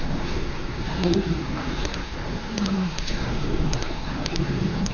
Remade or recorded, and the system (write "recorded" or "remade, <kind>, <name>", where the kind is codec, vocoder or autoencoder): remade, codec, SNAC